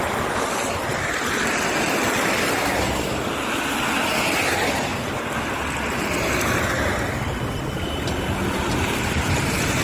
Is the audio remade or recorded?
recorded